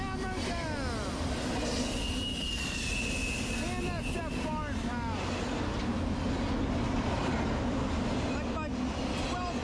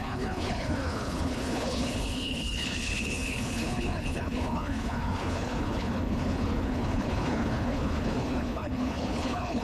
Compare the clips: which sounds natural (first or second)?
first